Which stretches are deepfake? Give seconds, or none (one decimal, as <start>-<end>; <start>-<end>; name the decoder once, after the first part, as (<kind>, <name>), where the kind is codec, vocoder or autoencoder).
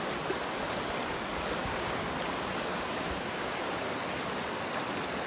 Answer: 1.6-2.2 (codec, DAC); 2.7-3.6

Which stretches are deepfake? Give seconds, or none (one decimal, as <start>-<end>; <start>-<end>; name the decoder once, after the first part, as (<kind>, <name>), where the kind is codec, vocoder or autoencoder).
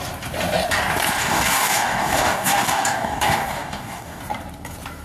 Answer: 1.2-4.2 (codec, DAC)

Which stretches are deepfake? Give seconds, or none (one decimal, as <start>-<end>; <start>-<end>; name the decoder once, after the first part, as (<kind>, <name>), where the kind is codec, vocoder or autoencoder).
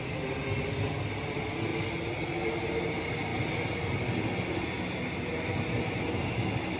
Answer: none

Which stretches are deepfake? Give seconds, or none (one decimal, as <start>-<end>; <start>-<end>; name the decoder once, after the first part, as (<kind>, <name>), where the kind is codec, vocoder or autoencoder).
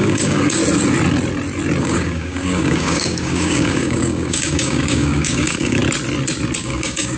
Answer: 0.0-0.6 (codec, DAC); 1.8-5.8; 6.6-7.2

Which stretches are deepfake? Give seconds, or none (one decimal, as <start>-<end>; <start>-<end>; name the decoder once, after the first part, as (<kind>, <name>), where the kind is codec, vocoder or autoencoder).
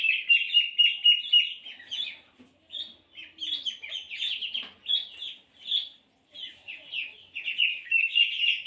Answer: 7.7-8.2 (codec, DAC)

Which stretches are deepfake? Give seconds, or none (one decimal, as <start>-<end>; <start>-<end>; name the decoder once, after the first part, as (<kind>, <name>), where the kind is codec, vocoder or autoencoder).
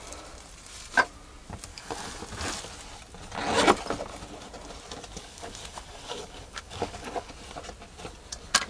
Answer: 1.7-2.2 (codec, DAC); 5.2-7.3